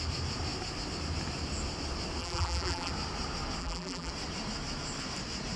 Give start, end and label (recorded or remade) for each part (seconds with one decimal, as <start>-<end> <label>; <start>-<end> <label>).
0.0-2.2 recorded; 2.2-2.9 remade; 2.9-3.6 recorded; 3.6-4.1 remade; 4.1-5.6 recorded